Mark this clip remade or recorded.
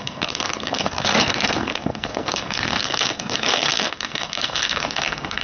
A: remade